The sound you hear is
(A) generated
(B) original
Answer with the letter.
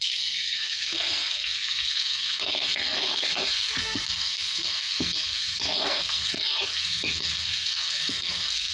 A